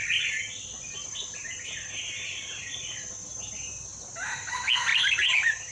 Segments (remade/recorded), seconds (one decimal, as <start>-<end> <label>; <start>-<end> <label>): 0.0-3.1 remade; 3.1-3.9 recorded; 3.9-4.5 remade; 4.5-4.9 recorded; 4.9-5.7 remade